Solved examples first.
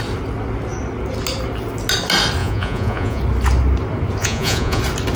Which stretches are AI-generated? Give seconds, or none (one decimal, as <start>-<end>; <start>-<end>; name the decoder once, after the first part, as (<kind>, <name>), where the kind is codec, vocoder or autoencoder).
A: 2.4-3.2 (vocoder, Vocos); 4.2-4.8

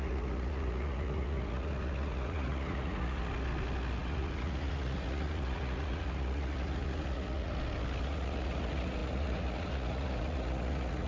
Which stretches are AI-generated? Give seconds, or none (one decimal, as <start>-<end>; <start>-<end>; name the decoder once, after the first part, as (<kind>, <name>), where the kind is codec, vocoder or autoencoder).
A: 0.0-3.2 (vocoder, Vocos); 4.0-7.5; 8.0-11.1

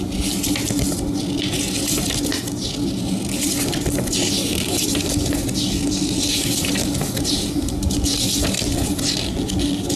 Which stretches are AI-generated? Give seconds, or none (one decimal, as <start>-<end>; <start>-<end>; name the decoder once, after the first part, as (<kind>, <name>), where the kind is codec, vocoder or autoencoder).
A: none

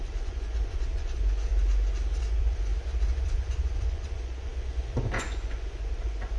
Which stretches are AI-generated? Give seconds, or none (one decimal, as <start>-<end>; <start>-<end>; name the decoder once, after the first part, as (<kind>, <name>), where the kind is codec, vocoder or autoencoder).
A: 0.0-1.5 (vocoder, Vocos); 2.2-2.7; 3.2-6.4

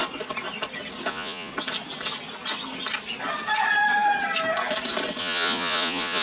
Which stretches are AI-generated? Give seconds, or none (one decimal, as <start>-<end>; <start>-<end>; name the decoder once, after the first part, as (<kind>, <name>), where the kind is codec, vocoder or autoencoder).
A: 1.1-1.5 (vocoder, Vocos); 5.2-6.2

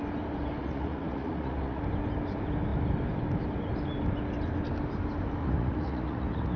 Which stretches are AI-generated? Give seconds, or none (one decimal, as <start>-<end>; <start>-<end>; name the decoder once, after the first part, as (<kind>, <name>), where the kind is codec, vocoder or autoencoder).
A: 0.6-1.8 (vocoder, Vocos); 5.4-6.6